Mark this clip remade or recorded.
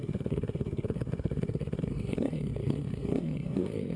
remade